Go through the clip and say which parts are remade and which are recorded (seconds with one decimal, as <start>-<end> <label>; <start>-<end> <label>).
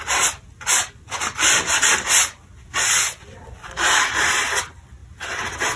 0.0-5.8 recorded